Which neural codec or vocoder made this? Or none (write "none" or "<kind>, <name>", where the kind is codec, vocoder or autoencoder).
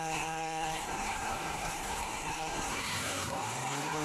codec, SNAC